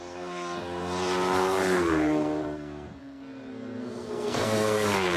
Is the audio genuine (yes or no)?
no